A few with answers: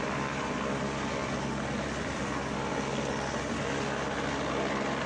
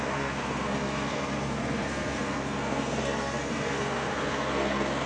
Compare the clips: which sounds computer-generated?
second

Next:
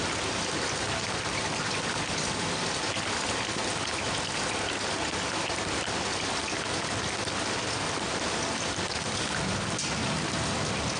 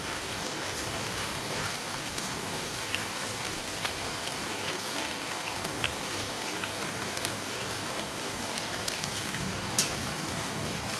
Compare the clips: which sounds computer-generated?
second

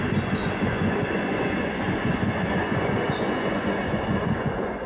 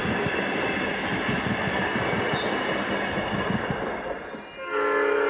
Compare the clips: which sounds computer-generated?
first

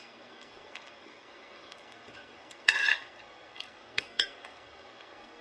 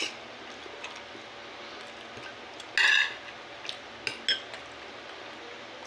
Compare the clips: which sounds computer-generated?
first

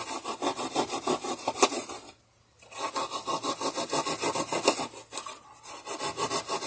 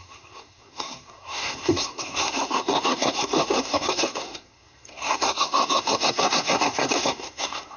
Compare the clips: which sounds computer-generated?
second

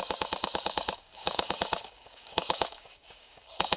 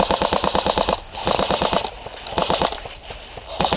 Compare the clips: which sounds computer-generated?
first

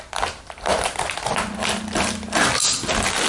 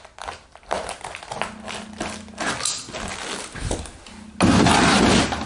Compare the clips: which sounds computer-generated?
first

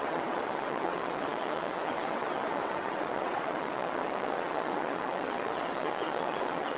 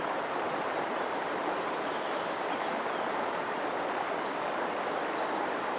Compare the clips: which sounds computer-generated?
first